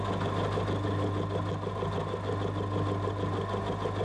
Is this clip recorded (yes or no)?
yes